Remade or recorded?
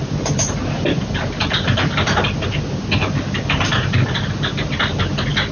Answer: recorded